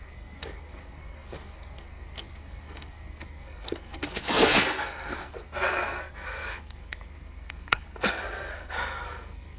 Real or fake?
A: fake